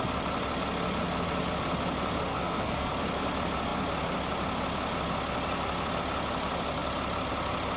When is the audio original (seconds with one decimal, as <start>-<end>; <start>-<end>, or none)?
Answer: 0.0-2.3; 2.9-7.8

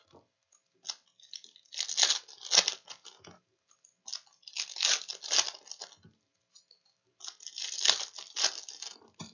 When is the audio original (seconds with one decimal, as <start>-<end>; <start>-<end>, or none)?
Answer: 0.0-9.3

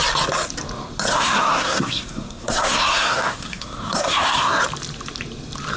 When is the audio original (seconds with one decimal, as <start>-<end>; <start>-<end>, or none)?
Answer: 0.0-1.1; 4.6-5.8

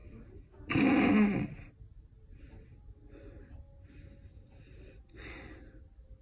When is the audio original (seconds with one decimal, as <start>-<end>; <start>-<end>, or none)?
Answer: 0.0-6.2

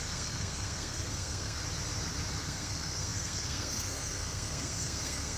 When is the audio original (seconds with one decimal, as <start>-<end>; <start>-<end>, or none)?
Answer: 1.6-2.4